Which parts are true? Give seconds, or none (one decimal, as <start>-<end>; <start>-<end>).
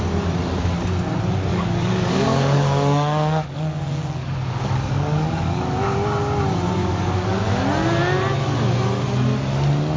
0.0-1.5; 5.8-6.8; 7.6-10.0